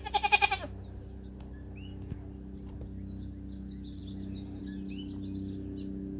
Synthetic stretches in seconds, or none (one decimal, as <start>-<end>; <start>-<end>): none